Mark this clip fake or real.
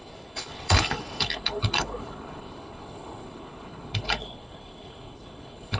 fake